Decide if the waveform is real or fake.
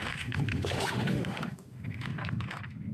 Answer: fake